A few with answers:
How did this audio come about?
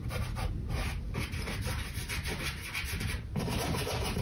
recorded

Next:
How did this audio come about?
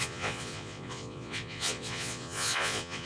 remade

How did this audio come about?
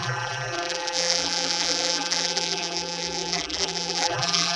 remade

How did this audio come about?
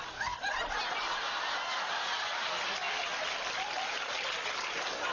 recorded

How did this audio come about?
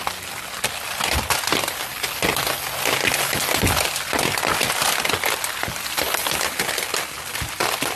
recorded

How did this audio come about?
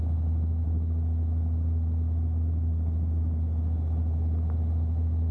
recorded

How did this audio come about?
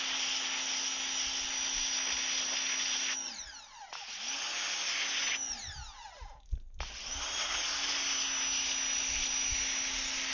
recorded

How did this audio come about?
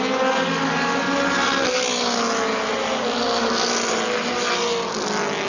recorded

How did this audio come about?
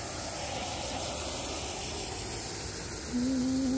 recorded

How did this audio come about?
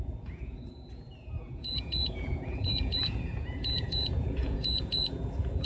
remade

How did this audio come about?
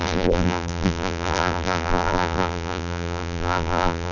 remade